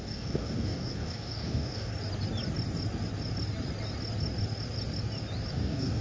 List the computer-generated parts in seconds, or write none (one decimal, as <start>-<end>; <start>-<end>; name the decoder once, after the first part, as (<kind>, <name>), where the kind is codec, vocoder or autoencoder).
0.0-1.9 (codec, DAC); 5.5-6.0

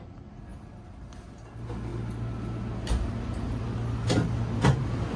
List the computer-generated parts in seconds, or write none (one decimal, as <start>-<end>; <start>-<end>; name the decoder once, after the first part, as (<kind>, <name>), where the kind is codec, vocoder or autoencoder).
none